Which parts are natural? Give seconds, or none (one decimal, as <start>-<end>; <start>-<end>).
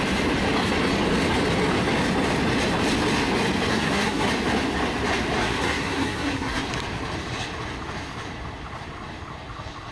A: 0.0-3.7; 4.3-5.4; 6.6-9.9